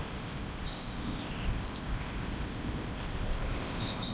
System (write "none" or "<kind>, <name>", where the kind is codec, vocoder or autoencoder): codec, ZipCodec